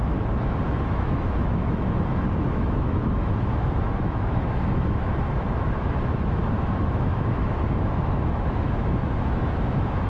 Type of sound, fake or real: fake